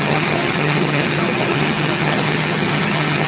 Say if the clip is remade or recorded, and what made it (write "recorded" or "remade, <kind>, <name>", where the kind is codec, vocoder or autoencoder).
remade, vocoder, HiFi-GAN